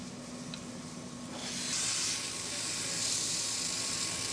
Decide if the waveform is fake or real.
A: real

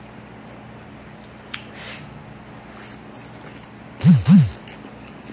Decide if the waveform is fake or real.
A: real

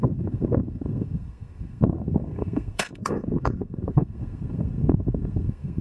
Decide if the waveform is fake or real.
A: fake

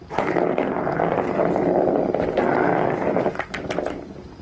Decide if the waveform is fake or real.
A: real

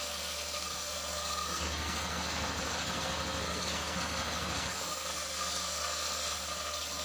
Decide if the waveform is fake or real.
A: fake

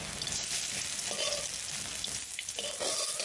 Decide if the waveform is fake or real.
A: real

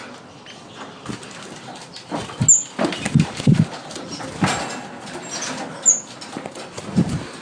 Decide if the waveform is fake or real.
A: real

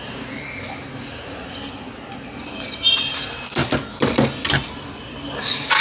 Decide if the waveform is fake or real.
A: real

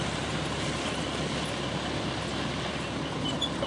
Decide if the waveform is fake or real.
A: real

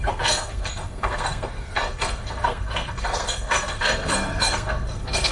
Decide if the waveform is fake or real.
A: fake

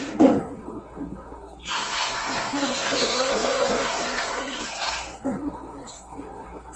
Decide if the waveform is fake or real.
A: fake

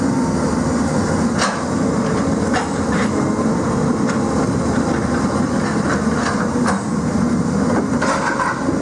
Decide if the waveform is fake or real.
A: real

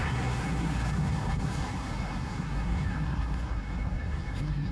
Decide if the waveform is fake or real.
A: fake